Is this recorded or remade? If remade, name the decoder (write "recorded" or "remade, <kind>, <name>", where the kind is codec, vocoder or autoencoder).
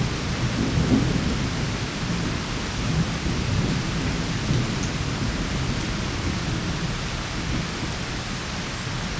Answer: recorded